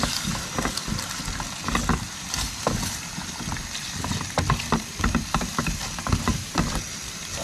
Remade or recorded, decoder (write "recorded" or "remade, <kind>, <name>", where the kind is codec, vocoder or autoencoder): recorded